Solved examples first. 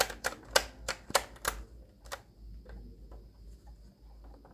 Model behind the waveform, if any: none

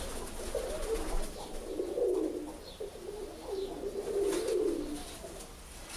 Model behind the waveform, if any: none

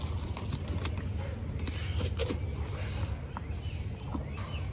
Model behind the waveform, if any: none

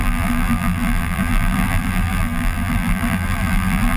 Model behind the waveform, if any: vocoder, BigVGAN v2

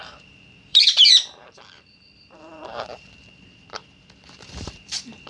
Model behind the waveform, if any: vocoder, BigVGAN v2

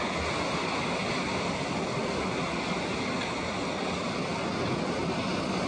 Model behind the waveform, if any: none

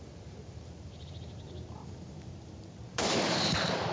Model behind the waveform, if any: vocoder, BigVGAN v2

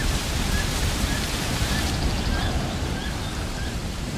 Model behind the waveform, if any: vocoder, BigVGAN v2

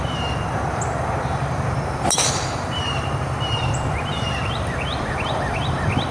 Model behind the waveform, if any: vocoder, BigVGAN v2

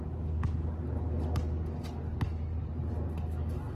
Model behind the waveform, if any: none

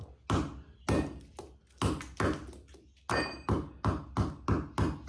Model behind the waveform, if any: none